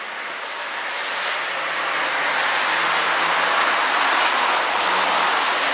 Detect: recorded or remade recorded